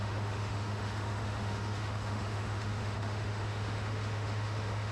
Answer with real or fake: fake